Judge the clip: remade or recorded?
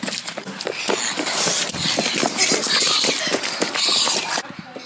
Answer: recorded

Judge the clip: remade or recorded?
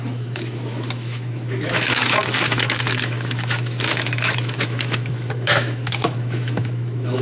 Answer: remade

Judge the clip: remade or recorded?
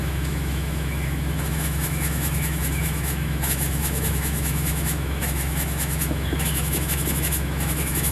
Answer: remade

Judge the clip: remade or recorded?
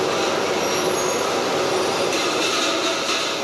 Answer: recorded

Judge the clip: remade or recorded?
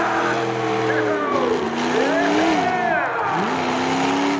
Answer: recorded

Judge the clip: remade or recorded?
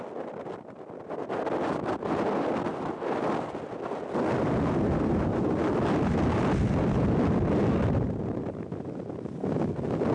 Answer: recorded